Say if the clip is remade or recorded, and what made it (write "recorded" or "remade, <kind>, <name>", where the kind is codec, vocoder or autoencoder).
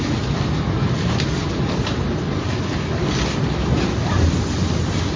recorded